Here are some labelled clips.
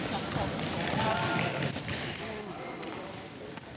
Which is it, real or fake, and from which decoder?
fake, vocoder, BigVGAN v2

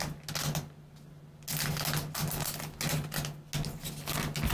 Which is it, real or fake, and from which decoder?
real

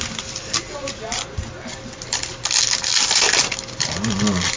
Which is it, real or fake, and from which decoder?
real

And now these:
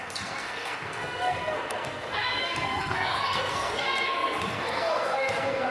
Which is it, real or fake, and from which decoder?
fake, codec, SNAC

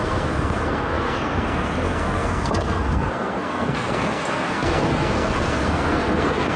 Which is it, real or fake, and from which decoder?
fake, codec, SNAC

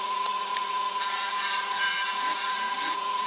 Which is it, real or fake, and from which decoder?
fake, vocoder, Vocos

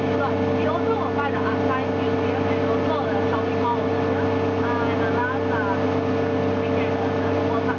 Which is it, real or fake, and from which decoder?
real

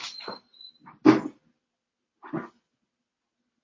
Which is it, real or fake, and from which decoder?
real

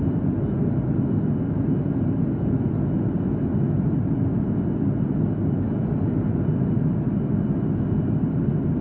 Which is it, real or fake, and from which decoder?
real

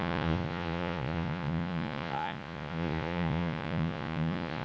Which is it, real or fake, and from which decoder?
fake, vocoder, Vocos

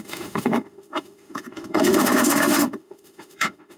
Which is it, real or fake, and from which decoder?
fake, autoencoder, DAC-VAE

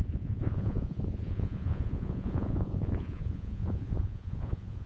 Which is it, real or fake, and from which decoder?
fake, vocoder, Vocos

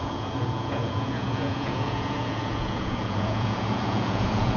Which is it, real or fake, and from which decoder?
fake, vocoder, Vocos